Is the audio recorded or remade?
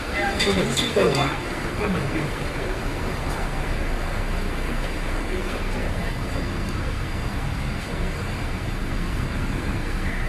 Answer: remade